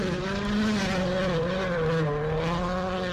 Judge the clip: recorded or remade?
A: recorded